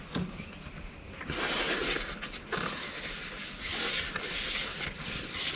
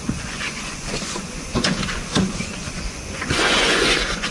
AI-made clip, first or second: second